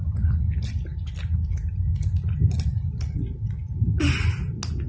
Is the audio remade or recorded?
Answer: recorded